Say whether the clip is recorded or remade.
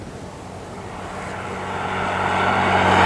recorded